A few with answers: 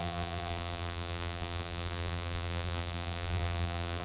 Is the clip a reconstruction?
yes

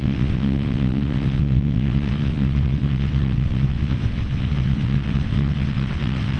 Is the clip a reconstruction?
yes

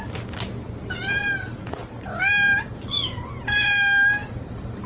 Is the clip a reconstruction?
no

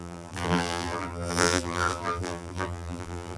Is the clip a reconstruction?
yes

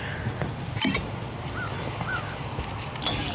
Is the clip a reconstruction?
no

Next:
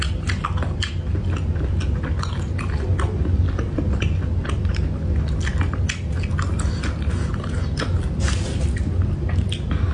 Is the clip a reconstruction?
no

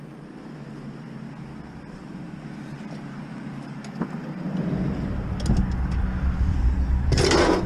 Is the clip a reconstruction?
no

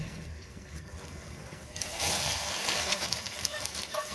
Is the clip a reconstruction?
yes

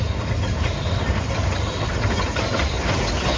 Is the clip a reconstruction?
no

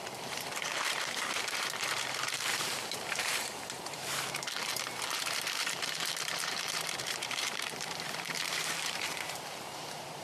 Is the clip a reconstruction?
yes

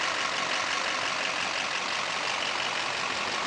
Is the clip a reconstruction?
no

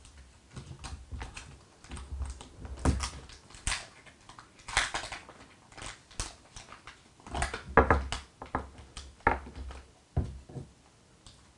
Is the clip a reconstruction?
no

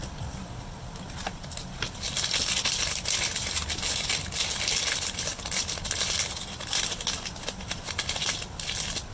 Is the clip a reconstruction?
yes